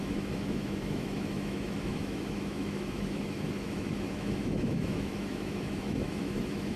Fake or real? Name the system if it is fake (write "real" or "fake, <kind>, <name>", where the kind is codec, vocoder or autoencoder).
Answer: fake, autoencoder, DAC-VAE